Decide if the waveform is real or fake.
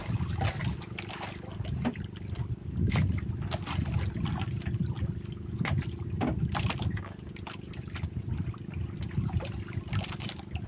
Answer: real